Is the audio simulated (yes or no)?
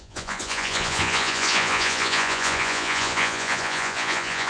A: yes